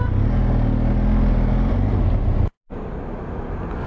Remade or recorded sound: recorded